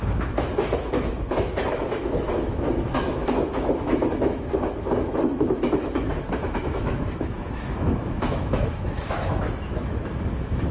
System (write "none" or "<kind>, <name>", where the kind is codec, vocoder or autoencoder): autoencoder, DAC-VAE